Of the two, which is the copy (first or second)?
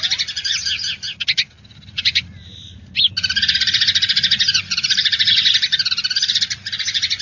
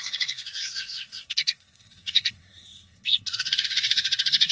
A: second